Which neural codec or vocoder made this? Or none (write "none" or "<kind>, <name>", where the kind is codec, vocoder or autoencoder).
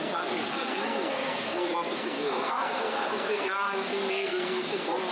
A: codec, SNAC